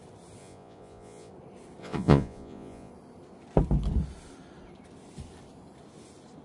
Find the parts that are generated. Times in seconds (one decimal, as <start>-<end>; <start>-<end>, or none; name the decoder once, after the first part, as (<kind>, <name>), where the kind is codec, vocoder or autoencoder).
0.4-1.3 (vocoder, Vocos); 1.8-2.9